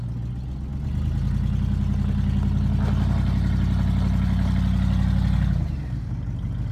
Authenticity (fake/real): real